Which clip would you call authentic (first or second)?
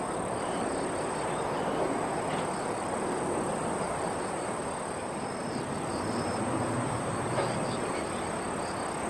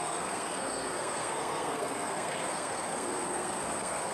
first